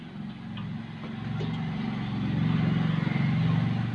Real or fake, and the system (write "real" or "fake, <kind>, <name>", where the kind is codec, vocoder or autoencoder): real